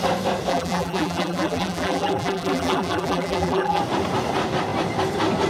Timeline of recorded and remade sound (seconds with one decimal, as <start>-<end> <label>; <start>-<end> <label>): 0.0-0.5 recorded; 0.5-3.8 remade; 3.8-5.5 recorded